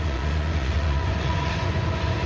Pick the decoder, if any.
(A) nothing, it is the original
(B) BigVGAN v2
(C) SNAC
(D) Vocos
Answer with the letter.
D